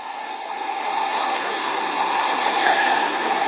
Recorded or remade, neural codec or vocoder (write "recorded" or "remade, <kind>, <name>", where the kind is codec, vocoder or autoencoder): remade, codec, SNAC